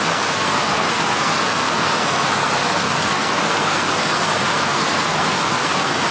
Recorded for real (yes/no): no